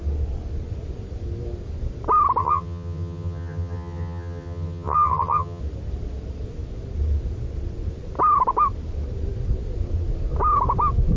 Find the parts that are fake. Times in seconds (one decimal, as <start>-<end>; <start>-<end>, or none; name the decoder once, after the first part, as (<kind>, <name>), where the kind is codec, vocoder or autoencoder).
2.4-5.6 (vocoder, HiFi-GAN)